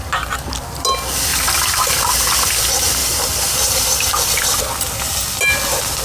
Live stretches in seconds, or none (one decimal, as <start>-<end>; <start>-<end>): 0.0-3.0; 3.8-6.0